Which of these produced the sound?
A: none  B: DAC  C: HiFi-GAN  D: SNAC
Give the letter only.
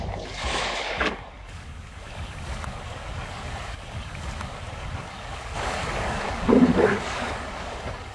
B